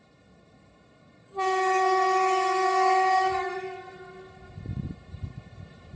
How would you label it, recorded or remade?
remade